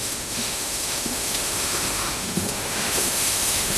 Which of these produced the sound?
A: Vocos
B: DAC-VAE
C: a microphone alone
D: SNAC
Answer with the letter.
B